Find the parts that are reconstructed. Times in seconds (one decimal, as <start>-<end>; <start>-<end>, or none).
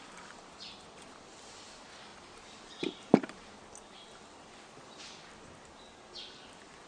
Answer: 2.1-3.5